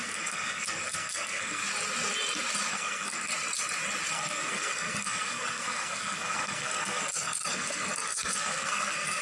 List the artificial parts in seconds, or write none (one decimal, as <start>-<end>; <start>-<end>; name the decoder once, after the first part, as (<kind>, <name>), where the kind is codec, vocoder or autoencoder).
0.0-1.6 (codec, SNAC); 2.7-3.3; 4.1-9.2